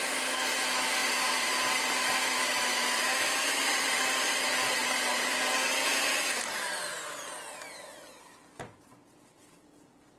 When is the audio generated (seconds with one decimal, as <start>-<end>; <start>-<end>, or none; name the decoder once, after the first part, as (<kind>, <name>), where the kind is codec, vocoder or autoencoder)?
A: 1.0-6.2 (vocoder, BigVGAN v2)